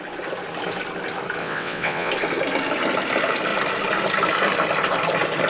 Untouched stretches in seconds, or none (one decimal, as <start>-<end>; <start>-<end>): 0.0-1.4; 2.1-5.5